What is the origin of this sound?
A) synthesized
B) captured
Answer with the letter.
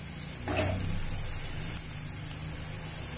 B